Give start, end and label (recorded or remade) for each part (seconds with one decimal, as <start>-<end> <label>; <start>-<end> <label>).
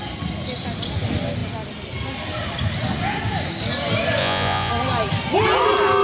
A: 0.0-4.2 recorded; 4.2-4.7 remade; 4.7-6.0 recorded